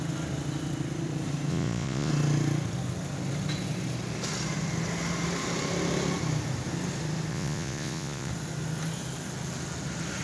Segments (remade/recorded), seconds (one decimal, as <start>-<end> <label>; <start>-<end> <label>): 0.0-1.5 recorded; 1.5-2.1 remade; 2.1-7.3 recorded; 7.3-8.3 remade; 8.3-10.2 recorded